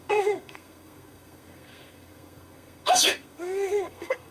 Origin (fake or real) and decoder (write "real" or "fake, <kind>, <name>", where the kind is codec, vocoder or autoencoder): fake, codec, SNAC